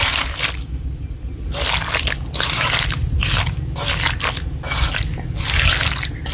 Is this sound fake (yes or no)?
no